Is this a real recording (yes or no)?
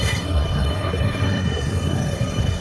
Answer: no